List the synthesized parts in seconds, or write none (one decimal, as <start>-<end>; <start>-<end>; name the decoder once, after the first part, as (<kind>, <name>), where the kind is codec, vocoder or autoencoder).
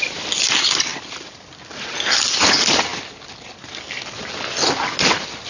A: none